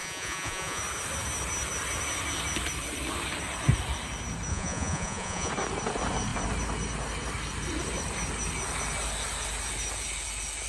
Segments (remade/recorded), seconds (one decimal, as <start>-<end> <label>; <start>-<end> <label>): 0.0-0.8 remade; 0.8-4.5 recorded; 4.5-5.5 remade; 5.5-10.7 recorded